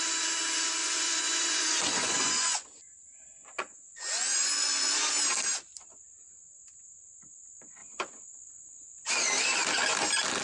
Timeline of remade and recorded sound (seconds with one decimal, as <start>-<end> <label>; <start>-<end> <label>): 0.0-0.8 recorded; 0.8-5.1 remade; 5.1-10.4 recorded